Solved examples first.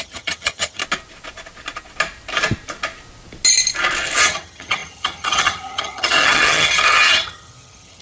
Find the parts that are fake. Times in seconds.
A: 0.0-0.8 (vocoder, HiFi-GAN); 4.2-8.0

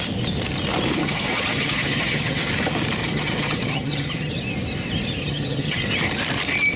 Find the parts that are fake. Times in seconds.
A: 1.0-2.5 (vocoder, HiFi-GAN); 3.0-4.3; 5.2-5.8